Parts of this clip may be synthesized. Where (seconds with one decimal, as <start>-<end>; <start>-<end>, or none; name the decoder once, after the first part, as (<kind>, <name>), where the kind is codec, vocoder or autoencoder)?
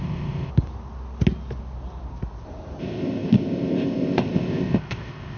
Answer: 0.0-0.5 (codec, ZipCodec); 2.8-5.4